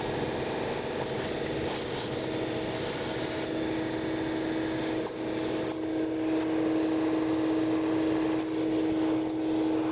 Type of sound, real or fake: real